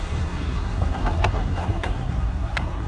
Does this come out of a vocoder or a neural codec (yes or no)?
yes